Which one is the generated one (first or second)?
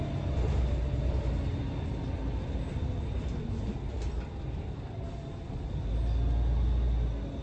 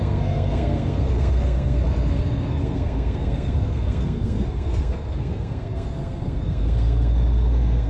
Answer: second